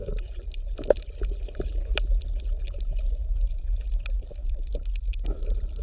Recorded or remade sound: recorded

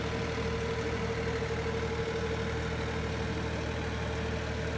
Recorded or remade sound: recorded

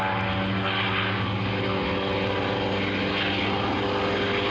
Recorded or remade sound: recorded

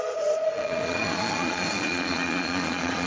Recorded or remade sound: remade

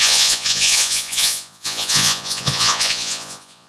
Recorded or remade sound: remade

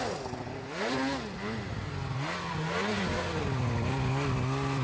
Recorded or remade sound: recorded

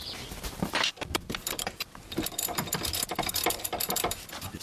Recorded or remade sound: recorded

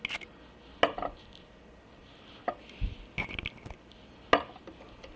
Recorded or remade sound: recorded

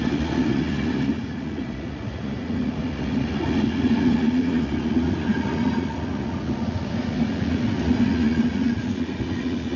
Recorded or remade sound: remade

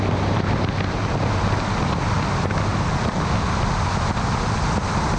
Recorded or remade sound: recorded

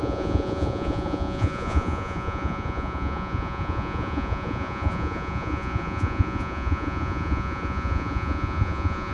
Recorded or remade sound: remade